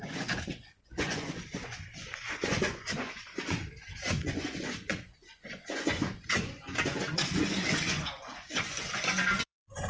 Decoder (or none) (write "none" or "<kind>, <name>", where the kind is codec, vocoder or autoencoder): vocoder, Vocos